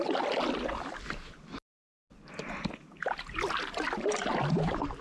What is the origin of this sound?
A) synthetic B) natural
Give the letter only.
B